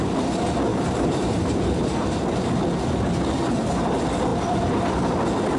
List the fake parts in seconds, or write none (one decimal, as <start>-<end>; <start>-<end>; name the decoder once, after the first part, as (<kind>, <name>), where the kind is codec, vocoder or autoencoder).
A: 0.7-2.4 (vocoder, BigVGAN v2); 4.3-5.0